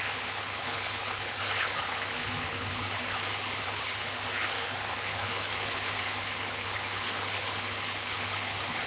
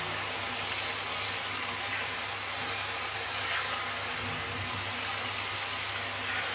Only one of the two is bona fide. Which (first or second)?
second